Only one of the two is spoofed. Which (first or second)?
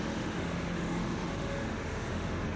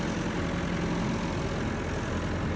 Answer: first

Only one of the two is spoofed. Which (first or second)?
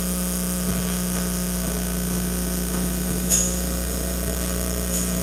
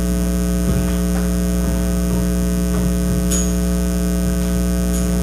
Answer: first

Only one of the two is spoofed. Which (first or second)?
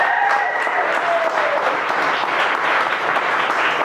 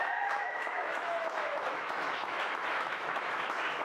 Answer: second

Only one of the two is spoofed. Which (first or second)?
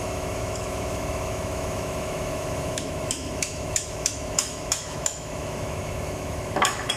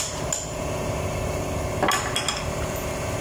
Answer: first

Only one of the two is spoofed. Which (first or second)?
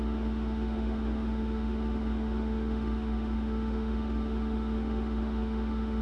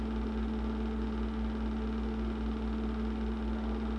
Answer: first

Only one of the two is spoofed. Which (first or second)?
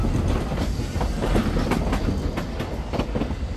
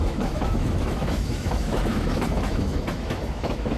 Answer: second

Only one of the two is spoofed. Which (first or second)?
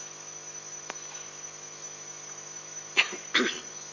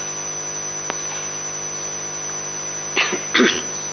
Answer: first